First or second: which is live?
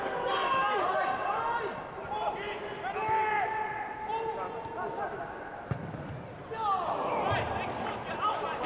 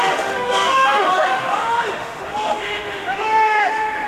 first